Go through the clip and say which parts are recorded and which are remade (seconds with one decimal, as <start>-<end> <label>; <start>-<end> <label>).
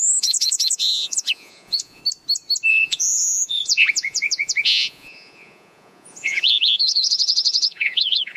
0.0-2.0 remade; 2.0-2.7 recorded; 2.7-8.4 remade